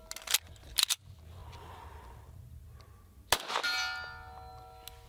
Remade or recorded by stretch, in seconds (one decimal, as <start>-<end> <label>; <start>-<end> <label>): 0.0-5.1 recorded